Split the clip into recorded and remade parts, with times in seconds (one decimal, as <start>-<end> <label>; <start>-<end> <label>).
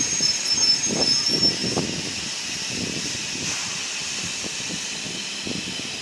0.0-6.0 recorded